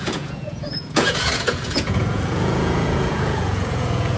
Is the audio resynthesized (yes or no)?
yes